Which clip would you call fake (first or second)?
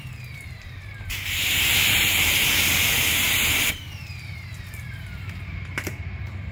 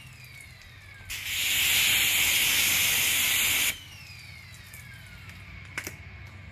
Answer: first